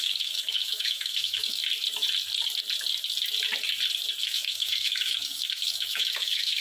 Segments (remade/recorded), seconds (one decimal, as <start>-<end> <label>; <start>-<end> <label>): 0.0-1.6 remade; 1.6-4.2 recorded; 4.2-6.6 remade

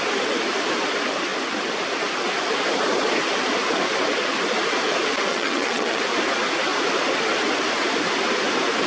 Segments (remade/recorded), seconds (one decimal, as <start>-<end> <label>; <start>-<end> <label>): 0.0-5.3 recorded; 5.3-6.0 remade; 6.0-8.9 recorded

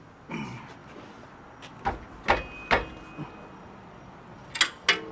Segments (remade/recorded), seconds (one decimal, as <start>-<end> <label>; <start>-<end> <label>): 0.0-5.1 recorded